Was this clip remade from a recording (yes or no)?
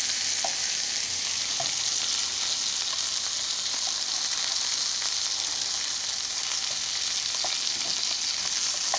no